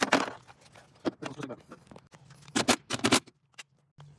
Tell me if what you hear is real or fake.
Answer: real